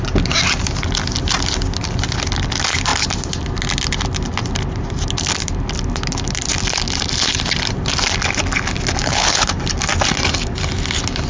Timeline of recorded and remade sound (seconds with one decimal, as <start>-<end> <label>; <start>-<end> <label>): 0.0-9.0 recorded; 9.0-9.5 remade; 9.5-11.3 recorded